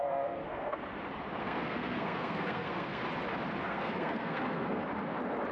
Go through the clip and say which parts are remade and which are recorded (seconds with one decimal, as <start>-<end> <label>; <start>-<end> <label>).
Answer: 0.0-0.8 remade; 0.8-1.4 recorded; 1.4-3.0 remade; 3.0-3.6 recorded; 3.6-4.8 remade; 4.8-5.5 recorded